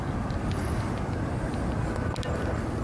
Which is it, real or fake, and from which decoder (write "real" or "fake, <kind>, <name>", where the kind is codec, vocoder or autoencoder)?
real